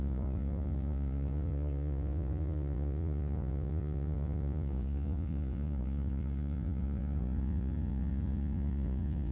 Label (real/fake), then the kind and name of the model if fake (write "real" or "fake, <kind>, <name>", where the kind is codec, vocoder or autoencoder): fake, vocoder, Vocos